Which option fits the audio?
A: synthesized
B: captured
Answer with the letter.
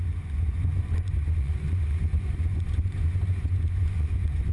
A